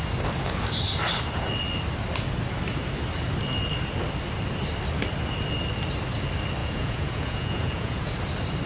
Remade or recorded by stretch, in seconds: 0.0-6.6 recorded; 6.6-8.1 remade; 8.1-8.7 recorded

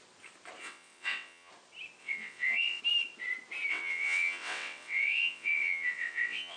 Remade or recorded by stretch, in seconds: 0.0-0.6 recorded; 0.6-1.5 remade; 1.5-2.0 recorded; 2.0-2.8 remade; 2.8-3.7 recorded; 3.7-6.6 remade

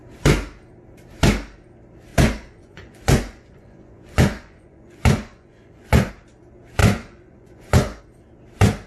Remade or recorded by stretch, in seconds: 0.0-2.1 recorded; 2.1-6.1 remade; 6.1-6.8 recorded; 6.8-8.0 remade; 8.0-8.9 recorded

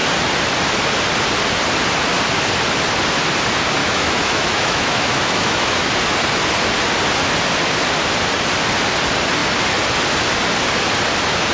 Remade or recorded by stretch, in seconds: 0.0-3.8 recorded; 3.8-5.9 remade; 5.9-11.5 recorded

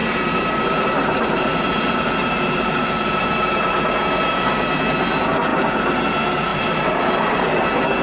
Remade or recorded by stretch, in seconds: 0.0-4.8 remade; 4.8-5.5 recorded; 5.5-6.0 remade; 6.0-6.5 recorded; 6.5-7.6 remade; 7.6-8.0 recorded

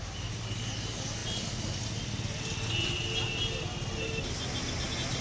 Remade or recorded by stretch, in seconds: 0.0-5.2 recorded